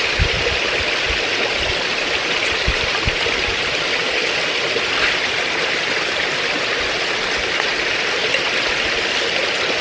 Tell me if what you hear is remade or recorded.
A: remade